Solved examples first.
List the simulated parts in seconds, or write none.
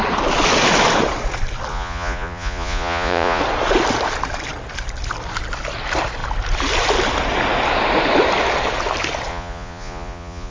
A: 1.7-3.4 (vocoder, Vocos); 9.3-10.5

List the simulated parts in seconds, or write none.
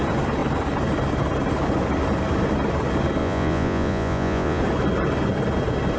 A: 3.2-4.6 (vocoder, Vocos)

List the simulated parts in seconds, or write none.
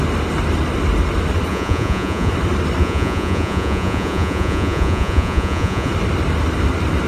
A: 1.5-2.3 (vocoder, Vocos); 2.8-5.9